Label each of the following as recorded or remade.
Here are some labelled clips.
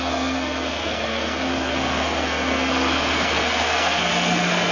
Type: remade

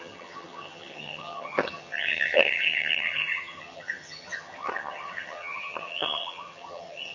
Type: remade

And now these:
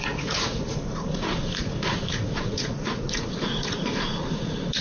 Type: remade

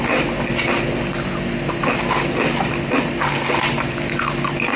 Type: recorded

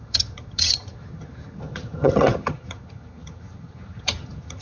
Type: remade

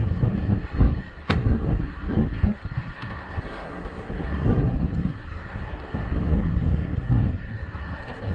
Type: remade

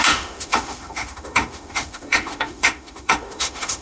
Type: remade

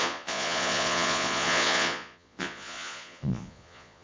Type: remade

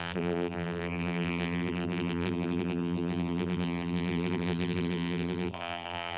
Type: remade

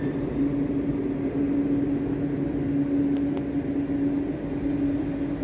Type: recorded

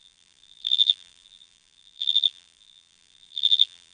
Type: remade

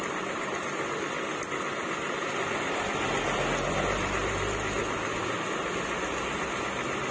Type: recorded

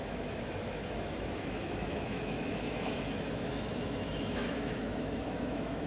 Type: remade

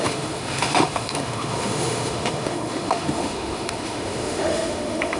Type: remade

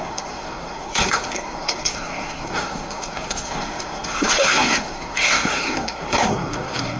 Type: remade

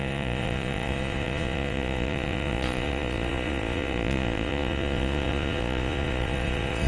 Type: remade